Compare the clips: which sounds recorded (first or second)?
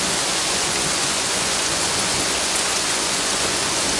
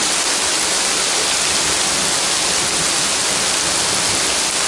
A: second